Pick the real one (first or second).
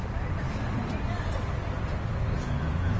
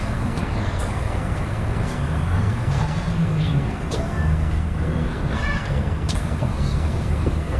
first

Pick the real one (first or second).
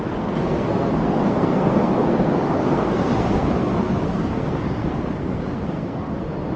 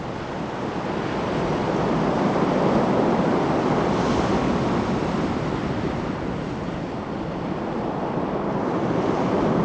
second